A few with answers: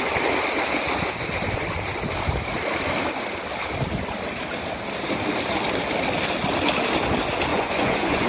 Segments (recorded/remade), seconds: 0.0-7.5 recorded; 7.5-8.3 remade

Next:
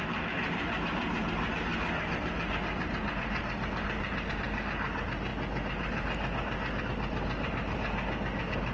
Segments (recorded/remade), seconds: 0.0-8.7 recorded